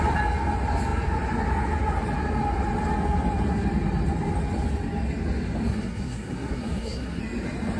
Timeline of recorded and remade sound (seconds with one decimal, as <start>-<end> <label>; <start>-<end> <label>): 0.0-5.7 recorded; 5.7-7.2 remade; 7.2-7.8 recorded